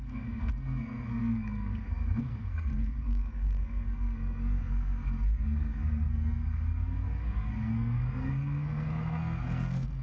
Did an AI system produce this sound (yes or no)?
yes